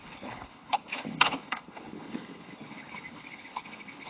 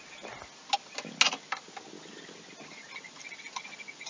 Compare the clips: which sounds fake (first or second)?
first